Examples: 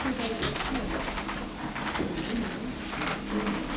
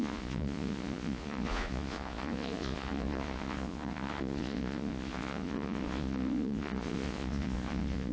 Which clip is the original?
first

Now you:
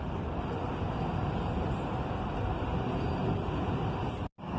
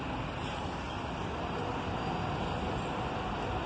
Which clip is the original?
second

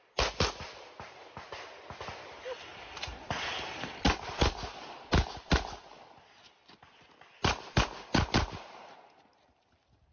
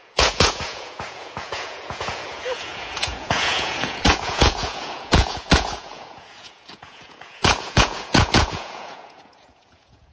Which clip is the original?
first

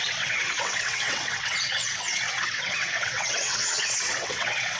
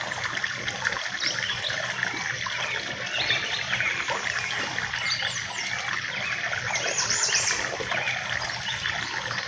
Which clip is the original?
second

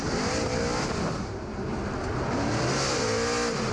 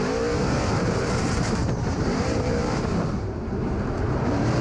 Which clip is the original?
first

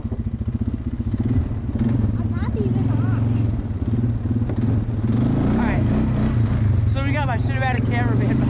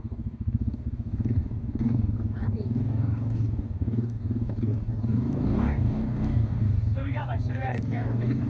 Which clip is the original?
first